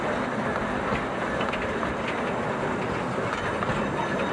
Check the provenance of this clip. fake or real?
real